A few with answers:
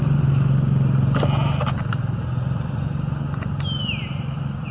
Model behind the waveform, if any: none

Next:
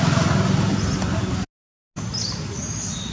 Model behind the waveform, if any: none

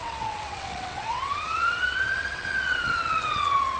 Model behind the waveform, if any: vocoder, WaveNeXt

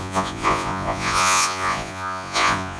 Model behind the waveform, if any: vocoder, Vocos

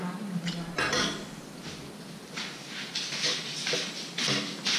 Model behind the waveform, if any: none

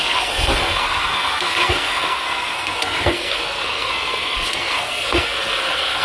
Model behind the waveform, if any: codec, SNAC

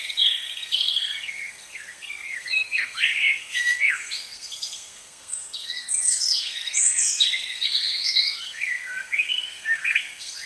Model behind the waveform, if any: codec, SNAC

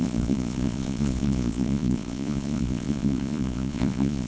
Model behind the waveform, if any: vocoder, Vocos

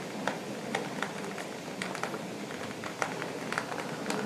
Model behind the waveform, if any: none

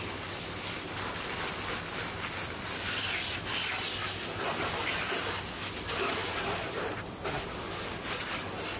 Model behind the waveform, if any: none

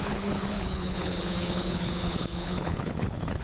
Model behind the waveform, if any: codec, HILCodec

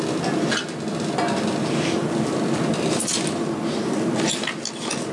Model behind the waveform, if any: none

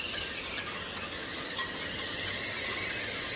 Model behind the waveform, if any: none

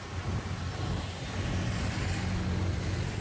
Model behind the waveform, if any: none